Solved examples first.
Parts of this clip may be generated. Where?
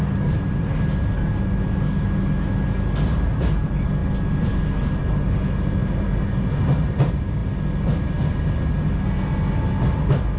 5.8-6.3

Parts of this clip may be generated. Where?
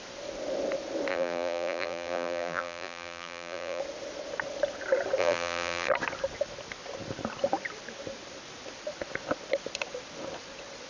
1.1-3.8; 5.2-5.9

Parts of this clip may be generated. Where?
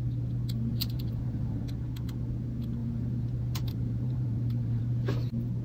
0.7-1.6; 2.8-4.8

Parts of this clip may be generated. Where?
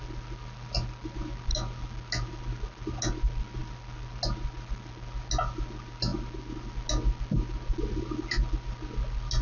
none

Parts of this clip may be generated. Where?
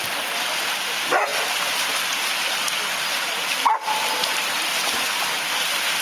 none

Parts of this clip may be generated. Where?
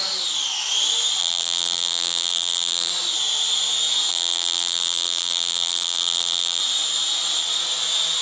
1.2-2.9; 4.1-6.6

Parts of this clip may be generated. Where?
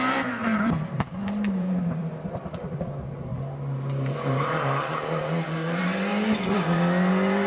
0.0-2.0